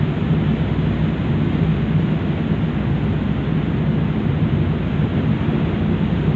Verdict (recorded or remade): recorded